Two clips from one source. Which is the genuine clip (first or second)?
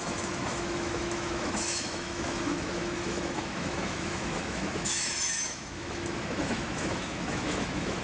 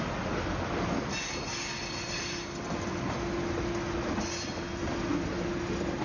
second